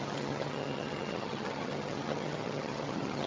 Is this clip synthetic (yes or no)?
yes